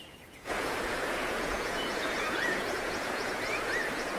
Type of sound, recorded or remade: remade